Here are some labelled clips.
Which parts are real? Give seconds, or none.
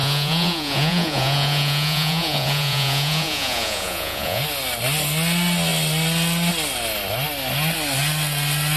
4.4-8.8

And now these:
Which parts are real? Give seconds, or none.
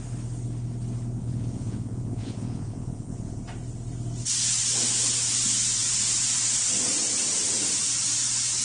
0.0-1.2; 3.4-8.6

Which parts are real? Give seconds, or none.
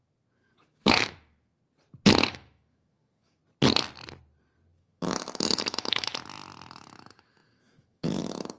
1.6-2.2; 3.4-4.8; 6.1-6.7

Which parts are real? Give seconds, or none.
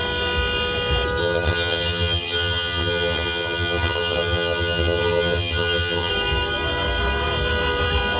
0.0-1.2; 6.1-8.2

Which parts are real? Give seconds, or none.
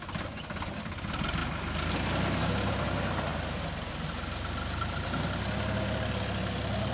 0.0-6.9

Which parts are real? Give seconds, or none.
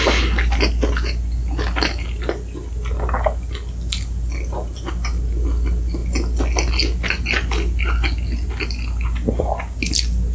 0.0-10.3